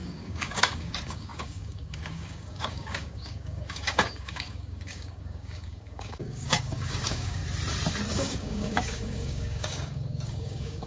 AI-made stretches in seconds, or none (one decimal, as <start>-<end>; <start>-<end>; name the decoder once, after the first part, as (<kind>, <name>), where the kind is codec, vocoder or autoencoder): 0.0-7.4 (codec, DAC); 8.1-10.9